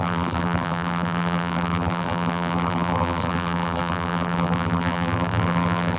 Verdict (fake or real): fake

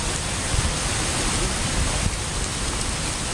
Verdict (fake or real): real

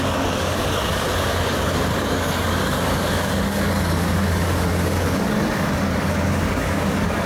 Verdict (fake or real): fake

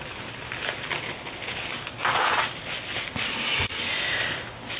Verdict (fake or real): real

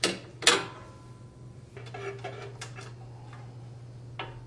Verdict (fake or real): real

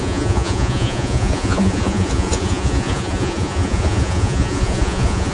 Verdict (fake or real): fake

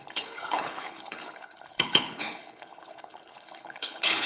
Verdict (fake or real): fake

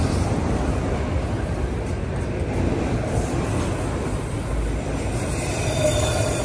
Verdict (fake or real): real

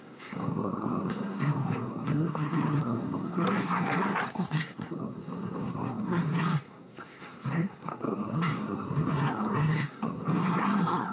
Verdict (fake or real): fake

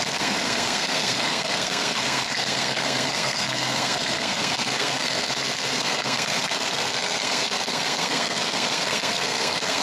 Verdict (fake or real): fake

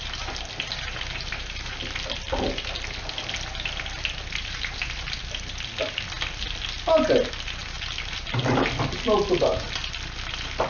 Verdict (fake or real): real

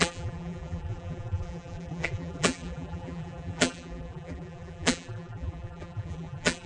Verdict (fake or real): fake